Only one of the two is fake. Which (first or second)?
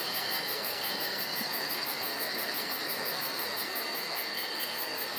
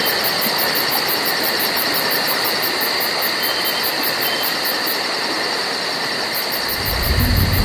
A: first